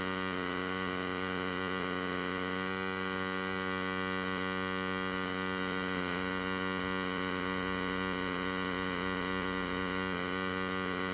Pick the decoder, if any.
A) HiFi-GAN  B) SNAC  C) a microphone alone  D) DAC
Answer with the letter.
C